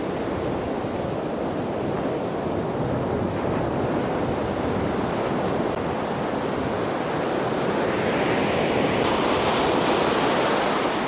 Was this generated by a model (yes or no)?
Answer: no